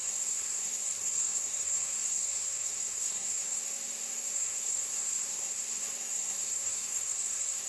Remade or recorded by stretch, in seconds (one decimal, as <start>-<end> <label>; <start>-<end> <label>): 0.0-7.7 remade